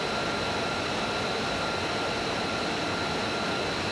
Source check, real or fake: real